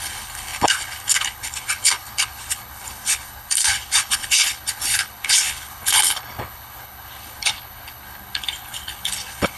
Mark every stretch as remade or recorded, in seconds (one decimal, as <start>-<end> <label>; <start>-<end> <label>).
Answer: 0.0-9.6 remade